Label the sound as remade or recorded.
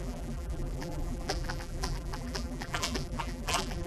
remade